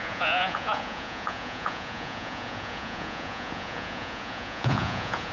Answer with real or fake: fake